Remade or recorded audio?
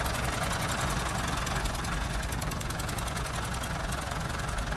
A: remade